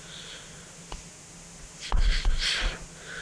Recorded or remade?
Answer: recorded